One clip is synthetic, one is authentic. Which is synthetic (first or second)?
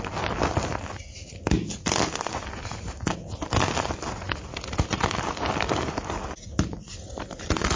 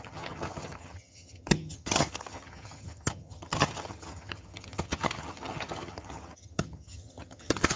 second